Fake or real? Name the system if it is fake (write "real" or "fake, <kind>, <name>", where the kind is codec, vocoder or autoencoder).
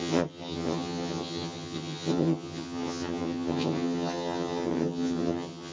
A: fake, vocoder, HiFi-GAN